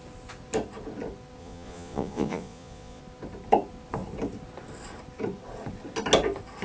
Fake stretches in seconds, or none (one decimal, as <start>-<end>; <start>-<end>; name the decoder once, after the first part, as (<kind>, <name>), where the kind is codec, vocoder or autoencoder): 1.4-3.0 (vocoder, Vocos)